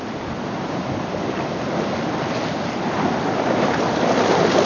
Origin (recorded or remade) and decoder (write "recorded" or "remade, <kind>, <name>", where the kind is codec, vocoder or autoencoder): recorded